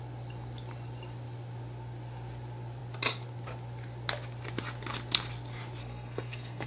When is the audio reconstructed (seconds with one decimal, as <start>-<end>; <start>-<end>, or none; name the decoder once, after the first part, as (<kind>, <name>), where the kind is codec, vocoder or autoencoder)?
5.8-6.7 (codec, SNAC)